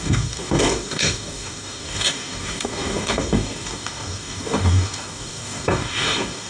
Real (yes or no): no